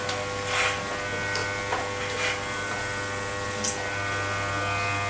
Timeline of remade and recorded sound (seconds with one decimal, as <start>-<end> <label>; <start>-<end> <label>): 0.0-1.4 recorded; 1.4-4.5 remade; 4.5-5.1 recorded